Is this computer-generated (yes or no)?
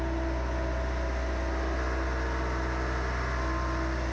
no